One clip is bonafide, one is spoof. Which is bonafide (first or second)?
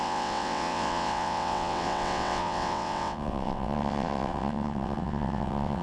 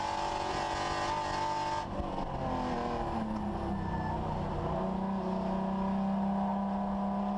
second